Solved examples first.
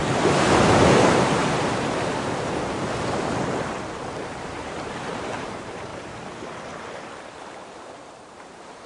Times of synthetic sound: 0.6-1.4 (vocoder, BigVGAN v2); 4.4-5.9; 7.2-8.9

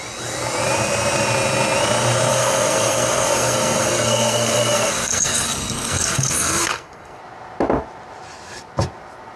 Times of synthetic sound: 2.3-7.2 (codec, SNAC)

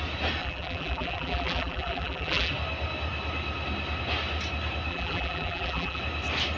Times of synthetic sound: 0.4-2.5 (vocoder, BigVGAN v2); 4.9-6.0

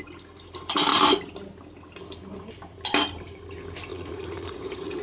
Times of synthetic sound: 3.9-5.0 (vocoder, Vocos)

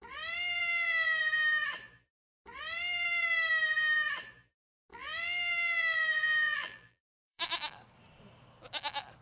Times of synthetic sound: 0.6-1.2 (vocoder, BigVGAN v2); 4.9-7.4